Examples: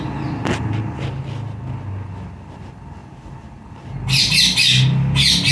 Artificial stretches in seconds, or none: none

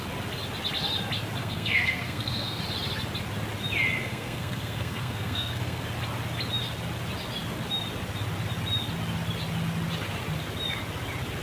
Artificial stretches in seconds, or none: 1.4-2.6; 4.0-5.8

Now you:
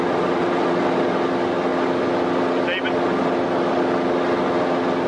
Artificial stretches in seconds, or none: none

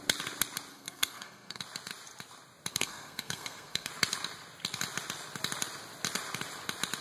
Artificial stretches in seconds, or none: 0.7-1.6; 2.7-3.9